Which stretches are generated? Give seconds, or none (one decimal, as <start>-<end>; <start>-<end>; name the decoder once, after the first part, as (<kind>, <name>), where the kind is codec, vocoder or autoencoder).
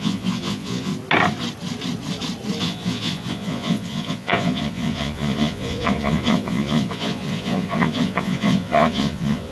0.0-0.9 (vocoder, Vocos); 2.6-9.5